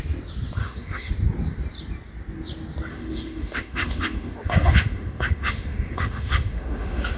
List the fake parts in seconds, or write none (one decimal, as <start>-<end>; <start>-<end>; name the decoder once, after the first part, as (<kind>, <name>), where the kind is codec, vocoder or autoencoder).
0.6-1.1 (autoencoder, DAC-VAE); 2.9-7.2